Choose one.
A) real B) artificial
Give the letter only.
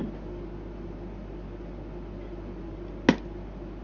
A